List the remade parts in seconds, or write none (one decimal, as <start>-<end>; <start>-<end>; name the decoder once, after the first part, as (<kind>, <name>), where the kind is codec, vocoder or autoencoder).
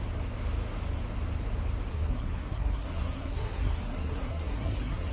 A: 1.9-5.1 (codec, SNAC)